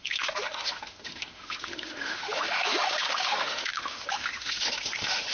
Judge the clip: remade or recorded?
remade